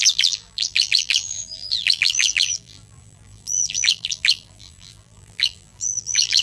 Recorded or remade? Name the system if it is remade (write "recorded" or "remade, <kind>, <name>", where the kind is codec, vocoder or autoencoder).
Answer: remade, vocoder, BigVGAN v2